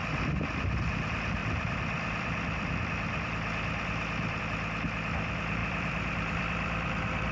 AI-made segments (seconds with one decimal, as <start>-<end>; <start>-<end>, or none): 0.0-0.6; 1.4-4.4; 5.6-7.3